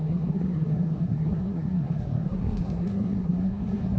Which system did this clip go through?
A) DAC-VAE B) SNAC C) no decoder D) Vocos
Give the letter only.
B